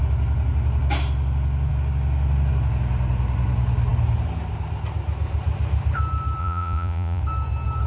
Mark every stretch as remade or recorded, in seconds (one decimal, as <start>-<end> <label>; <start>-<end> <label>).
0.0-6.4 recorded; 6.4-7.2 remade; 7.2-7.9 recorded

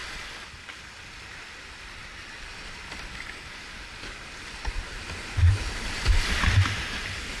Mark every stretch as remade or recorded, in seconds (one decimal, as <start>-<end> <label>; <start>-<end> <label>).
0.0-7.4 recorded

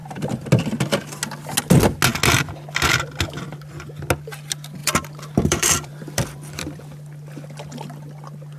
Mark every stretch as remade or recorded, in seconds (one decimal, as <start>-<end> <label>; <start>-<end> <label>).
0.0-4.8 recorded; 4.8-6.8 remade; 6.8-8.6 recorded

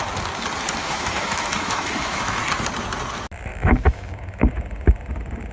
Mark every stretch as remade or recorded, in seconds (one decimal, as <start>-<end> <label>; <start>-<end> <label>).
0.0-0.8 recorded; 0.8-2.4 remade; 2.4-3.5 recorded; 3.5-4.5 remade; 4.5-5.5 recorded

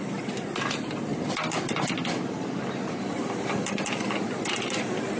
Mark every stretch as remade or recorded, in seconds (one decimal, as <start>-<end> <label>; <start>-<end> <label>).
0.0-5.2 recorded

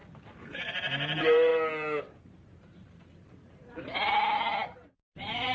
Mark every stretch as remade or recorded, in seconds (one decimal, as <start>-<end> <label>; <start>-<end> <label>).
0.0-0.6 recorded; 0.6-1.5 remade; 1.5-2.0 recorded; 2.0-4.6 remade; 4.6-5.1 recorded; 5.1-5.5 remade

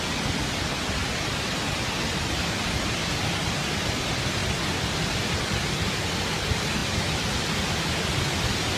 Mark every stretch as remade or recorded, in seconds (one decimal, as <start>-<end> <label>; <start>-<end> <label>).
0.0-8.8 recorded

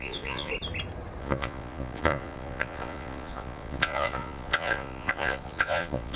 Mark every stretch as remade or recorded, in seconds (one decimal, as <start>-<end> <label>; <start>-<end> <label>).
0.0-0.5 remade; 0.5-1.2 recorded; 1.2-6.2 remade